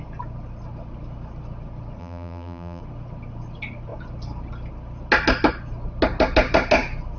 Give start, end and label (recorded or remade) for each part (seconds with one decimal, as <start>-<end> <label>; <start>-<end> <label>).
0.0-2.0 recorded; 2.0-2.8 remade; 2.8-7.2 recorded